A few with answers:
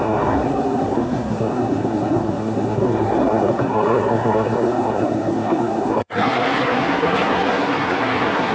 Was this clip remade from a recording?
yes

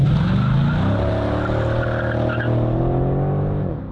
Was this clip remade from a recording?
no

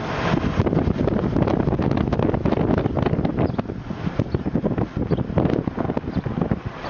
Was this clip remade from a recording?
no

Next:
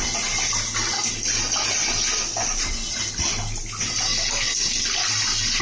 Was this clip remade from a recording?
no